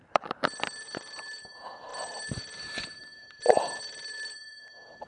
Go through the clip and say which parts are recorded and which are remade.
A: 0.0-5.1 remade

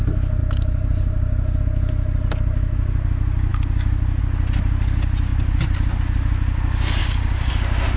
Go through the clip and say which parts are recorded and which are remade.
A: 0.0-0.4 recorded; 0.4-1.6 remade; 1.6-5.3 recorded; 5.3-5.9 remade; 5.9-7.0 recorded; 7.0-7.5 remade; 7.5-8.0 recorded

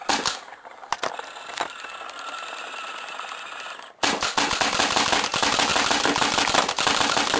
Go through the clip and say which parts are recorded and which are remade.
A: 0.0-7.4 recorded

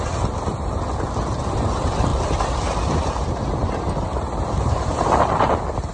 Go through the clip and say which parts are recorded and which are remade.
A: 0.0-5.9 recorded